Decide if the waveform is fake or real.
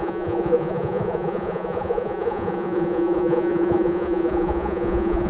fake